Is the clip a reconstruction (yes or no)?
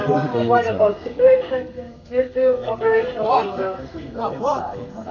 yes